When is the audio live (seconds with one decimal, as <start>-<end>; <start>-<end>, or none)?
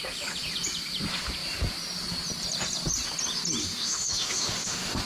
0.0-3.6